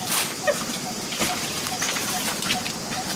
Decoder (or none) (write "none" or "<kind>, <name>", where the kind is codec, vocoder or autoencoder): vocoder, BigVGAN v2